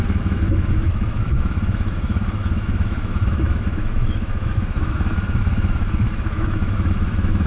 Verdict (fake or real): fake